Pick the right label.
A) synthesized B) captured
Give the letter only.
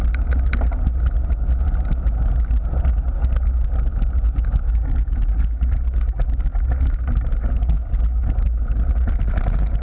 B